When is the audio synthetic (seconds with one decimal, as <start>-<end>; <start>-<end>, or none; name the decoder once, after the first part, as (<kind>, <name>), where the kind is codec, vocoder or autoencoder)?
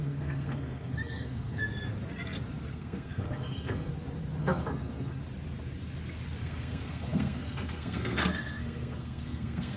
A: 0.0-1.6 (codec, SNAC); 2.7-3.9; 4.4-5.2; 6.4-9.8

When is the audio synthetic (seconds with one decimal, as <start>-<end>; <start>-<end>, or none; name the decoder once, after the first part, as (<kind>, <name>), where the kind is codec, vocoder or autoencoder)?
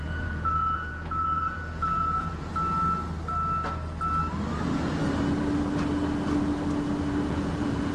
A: 0.0-2.5 (vocoder, Vocos); 7.2-7.9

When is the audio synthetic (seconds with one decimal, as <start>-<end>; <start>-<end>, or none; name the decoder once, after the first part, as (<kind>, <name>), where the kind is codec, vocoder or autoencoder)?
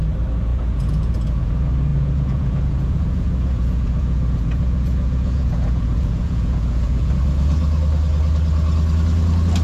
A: 0.5-1.5 (vocoder, Vocos); 1.9-7.1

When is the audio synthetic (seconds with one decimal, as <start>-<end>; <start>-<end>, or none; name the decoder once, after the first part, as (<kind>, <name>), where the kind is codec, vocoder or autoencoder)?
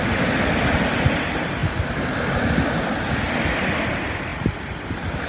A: none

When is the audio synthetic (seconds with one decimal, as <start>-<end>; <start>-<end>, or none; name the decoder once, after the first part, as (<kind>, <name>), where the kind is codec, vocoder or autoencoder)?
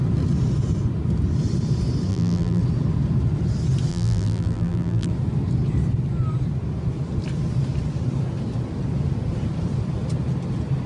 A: 2.1-2.6 (vocoder, BigVGAN v2); 3.9-5.1